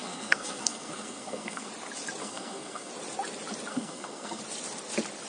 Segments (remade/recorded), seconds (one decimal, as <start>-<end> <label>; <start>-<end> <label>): 0.0-1.7 remade; 1.7-2.2 recorded; 2.2-2.9 remade; 2.9-3.7 recorded; 3.7-4.4 remade; 4.4-5.3 recorded